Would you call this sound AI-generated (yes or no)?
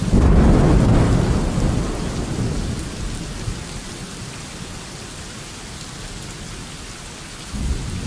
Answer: no